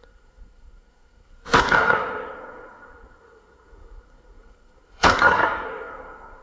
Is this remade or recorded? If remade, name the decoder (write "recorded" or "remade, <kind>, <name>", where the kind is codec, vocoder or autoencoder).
remade, codec, SNAC